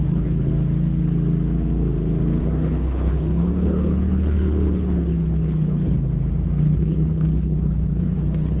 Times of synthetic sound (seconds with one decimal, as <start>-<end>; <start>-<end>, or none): 0.0-0.5; 2.4-6.1; 6.6-8.6